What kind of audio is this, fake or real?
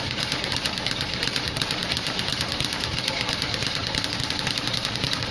fake